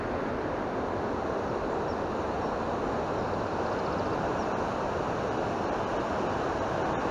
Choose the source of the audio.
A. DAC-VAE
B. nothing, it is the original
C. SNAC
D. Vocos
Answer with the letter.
B